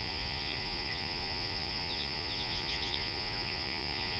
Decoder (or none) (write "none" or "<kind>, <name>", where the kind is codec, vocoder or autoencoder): vocoder, Vocos